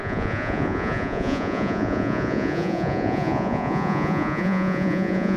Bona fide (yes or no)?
no